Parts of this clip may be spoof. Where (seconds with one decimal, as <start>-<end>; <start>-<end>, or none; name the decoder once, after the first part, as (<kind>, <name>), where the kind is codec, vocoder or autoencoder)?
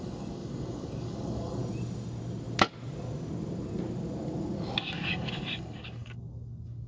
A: 0.0-1.6 (codec, DAC); 4.8-6.9